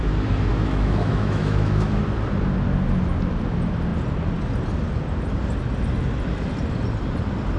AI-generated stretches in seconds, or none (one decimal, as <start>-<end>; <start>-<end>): 0.5-2.0